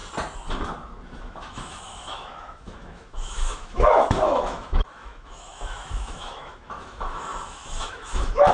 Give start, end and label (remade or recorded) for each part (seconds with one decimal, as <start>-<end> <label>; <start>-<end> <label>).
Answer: 0.0-1.2 recorded; 1.2-8.5 remade